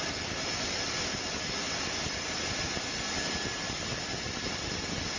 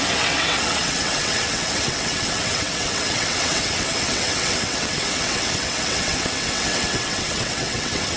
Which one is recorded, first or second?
first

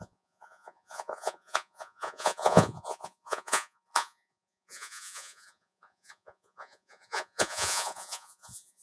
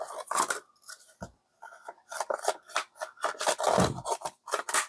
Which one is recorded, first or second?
second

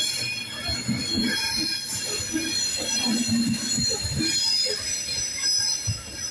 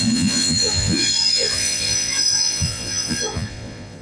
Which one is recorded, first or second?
first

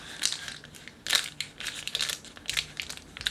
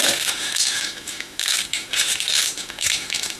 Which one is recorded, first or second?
first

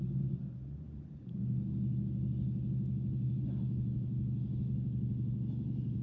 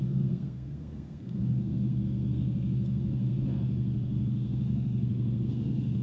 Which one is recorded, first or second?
first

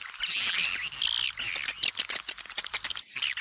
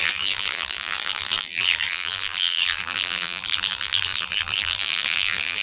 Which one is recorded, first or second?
first